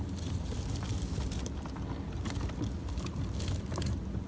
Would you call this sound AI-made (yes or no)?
yes